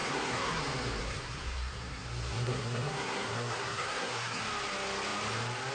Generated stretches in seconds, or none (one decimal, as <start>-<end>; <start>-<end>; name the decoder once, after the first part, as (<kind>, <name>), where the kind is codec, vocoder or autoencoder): 0.0-0.6 (codec, SNAC); 1.0-4.4